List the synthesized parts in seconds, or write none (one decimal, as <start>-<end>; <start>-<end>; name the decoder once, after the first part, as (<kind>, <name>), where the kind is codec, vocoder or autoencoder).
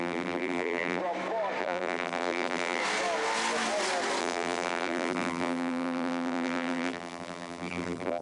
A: 0.0-1.0 (vocoder, BigVGAN v2); 1.6-2.8; 4.2-8.2